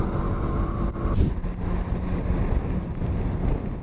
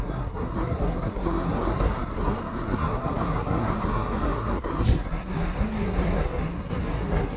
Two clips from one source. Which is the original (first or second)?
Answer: first